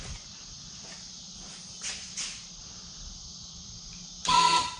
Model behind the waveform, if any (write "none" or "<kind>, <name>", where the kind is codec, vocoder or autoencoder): none